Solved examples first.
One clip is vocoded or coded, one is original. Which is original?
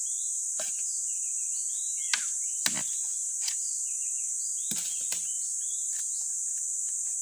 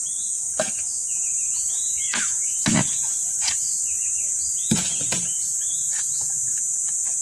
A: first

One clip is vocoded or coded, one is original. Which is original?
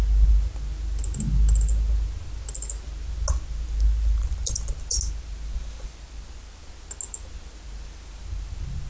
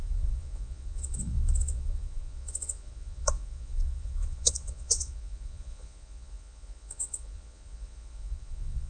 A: first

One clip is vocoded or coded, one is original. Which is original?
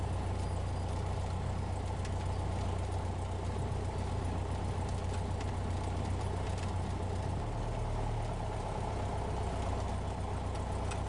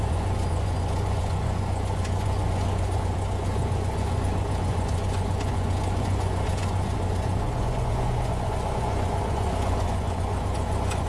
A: first